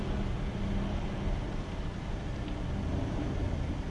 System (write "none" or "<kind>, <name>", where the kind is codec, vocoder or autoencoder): none